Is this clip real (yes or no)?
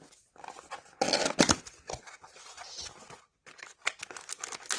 yes